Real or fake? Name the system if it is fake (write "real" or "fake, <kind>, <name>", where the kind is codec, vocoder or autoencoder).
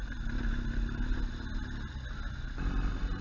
real